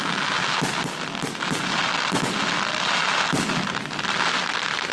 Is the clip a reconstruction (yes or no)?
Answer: no